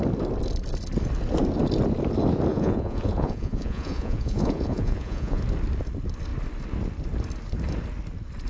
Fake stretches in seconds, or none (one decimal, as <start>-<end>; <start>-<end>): 2.5-5.4